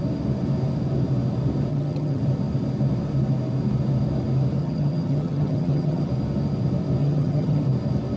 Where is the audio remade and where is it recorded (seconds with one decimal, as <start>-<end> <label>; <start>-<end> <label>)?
0.0-1.7 recorded; 1.7-2.2 remade; 2.2-4.6 recorded; 4.6-6.1 remade; 6.1-7.0 recorded; 7.0-7.6 remade; 7.6-8.2 recorded

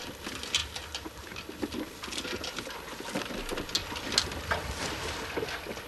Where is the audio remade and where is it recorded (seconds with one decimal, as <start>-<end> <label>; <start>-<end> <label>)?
0.0-5.9 recorded

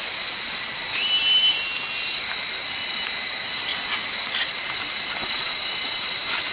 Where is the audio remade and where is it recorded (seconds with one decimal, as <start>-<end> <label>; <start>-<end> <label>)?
0.0-6.5 recorded

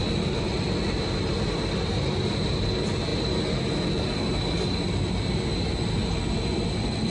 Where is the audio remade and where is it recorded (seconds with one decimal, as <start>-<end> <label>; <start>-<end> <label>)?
0.0-7.1 recorded

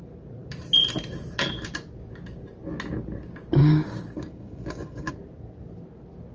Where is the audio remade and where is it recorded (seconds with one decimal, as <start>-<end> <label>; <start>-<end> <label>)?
0.0-3.6 recorded; 3.6-5.1 remade; 5.1-6.3 recorded